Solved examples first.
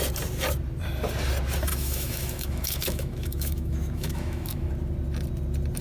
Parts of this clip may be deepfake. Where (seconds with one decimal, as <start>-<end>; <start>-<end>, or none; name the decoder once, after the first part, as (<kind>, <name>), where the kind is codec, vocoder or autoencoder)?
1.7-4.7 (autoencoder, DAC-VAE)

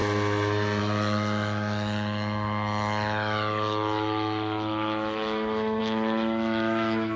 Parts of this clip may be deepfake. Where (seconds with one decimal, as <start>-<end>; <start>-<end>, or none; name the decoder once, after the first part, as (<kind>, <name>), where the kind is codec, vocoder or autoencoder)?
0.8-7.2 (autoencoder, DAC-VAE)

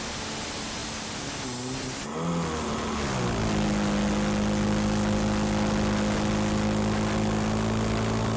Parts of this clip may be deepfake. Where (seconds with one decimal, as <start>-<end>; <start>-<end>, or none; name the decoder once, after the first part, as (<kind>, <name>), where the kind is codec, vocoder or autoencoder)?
none

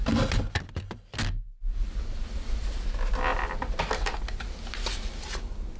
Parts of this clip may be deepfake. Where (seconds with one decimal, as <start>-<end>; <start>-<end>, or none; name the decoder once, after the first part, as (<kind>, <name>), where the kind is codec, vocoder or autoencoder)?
none

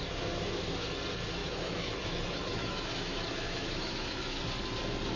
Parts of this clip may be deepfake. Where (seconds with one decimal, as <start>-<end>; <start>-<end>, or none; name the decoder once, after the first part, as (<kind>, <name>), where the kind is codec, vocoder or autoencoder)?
1.4-4.4 (autoencoder, DAC-VAE)

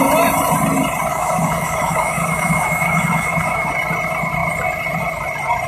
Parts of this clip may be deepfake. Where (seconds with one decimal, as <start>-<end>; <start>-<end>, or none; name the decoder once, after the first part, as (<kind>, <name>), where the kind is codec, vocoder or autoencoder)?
1.1-3.7 (autoencoder, DAC-VAE)